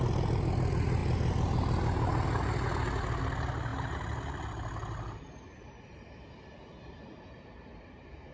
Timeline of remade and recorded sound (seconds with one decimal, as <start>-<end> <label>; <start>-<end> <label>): 0.0-8.3 recorded